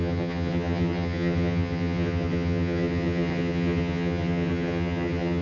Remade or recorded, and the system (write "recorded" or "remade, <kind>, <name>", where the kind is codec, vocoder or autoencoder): remade, vocoder, HiFi-GAN